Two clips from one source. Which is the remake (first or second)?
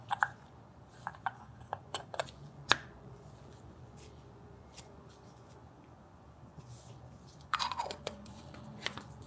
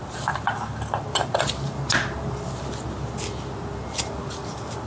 first